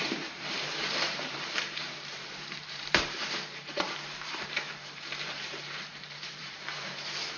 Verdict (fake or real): fake